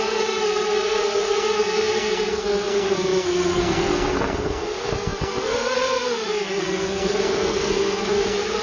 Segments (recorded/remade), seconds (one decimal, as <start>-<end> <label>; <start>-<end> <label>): 0.0-8.6 remade